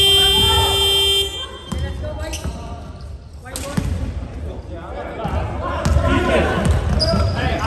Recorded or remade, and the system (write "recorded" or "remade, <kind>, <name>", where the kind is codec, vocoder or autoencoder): recorded